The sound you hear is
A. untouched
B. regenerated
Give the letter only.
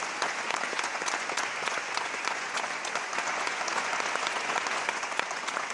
B